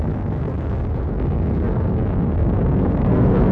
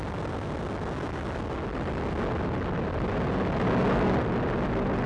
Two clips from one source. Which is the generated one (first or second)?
first